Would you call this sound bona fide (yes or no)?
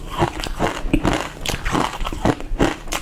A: no